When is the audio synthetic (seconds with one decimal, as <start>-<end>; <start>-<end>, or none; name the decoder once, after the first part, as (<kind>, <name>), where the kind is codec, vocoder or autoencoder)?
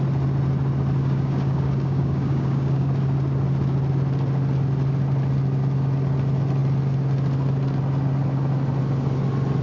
1.0-2.9 (codec, DAC)